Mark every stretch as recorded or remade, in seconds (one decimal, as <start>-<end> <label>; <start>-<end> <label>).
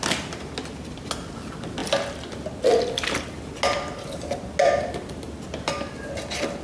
0.0-6.6 recorded